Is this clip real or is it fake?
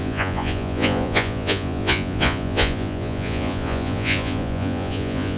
fake